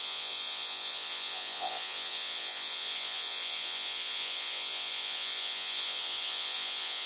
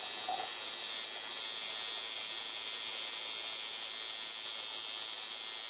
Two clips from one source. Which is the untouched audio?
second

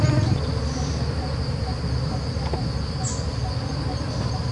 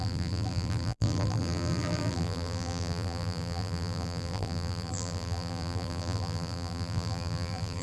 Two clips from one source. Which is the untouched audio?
first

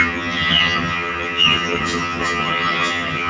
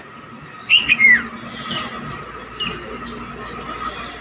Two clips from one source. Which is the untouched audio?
second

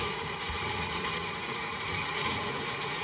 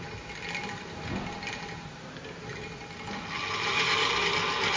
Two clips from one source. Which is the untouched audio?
second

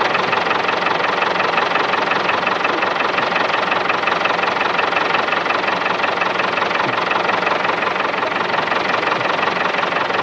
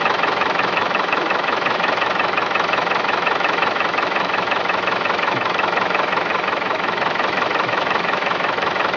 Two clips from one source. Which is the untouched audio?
first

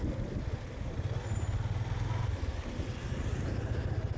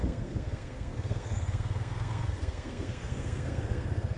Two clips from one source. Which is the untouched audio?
first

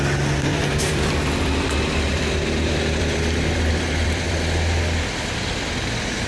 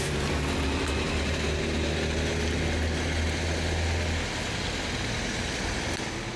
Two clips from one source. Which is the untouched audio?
second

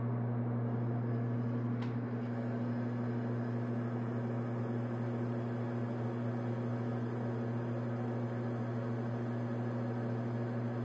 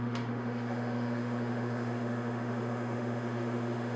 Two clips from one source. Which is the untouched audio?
first